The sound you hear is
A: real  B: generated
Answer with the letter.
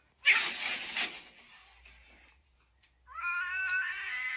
A